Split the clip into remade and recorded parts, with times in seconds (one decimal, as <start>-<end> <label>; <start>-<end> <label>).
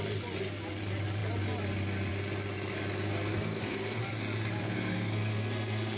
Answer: 0.0-3.3 recorded; 3.3-4.0 remade; 4.0-4.6 recorded; 4.6-6.0 remade